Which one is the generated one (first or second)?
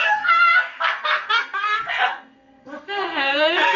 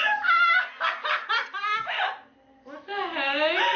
first